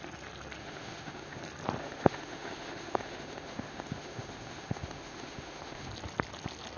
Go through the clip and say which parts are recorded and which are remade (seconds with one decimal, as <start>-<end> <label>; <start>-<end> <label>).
0.0-0.6 recorded; 0.6-1.4 remade; 1.4-1.8 recorded; 1.8-5.9 remade; 5.9-6.8 recorded